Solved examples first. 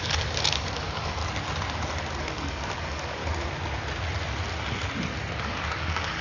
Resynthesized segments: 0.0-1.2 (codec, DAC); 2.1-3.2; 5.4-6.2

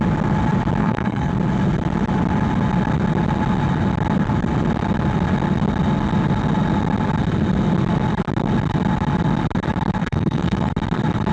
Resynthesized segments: 0.8-1.3 (codec, SNAC); 10.0-10.7

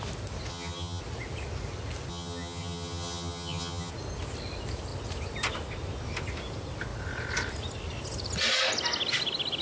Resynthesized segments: 0.5-1.0 (vocoder, HiFi-GAN); 2.1-3.9

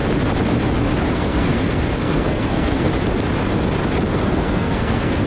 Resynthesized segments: 1.1-2.9 (codec, SNAC); 4.1-5.3

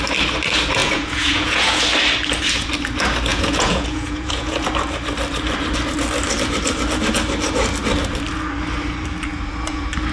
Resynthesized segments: 0.8-1.8 (vocoder, Vocos); 3.3-4.7

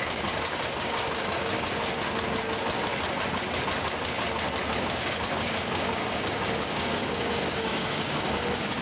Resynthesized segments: 0.0-1.9 (codec, DAC); 4.9-8.8